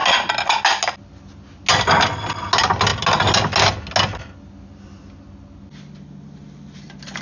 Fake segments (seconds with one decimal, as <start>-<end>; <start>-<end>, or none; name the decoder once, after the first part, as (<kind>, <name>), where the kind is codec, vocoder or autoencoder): none